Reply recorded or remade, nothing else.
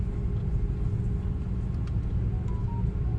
recorded